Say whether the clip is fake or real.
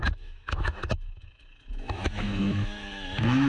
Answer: fake